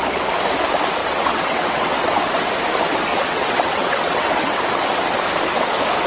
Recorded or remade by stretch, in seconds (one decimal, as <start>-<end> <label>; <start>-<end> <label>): 0.0-1.0 recorded; 1.0-2.5 remade; 2.5-3.1 recorded; 3.1-4.6 remade; 4.6-6.1 recorded